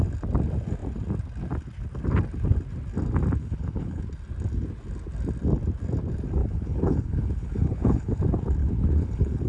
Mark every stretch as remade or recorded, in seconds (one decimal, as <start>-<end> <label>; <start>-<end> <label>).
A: 0.0-3.4 recorded; 3.4-4.0 remade; 4.0-6.4 recorded; 6.4-8.2 remade; 8.2-8.6 recorded; 8.6-9.5 remade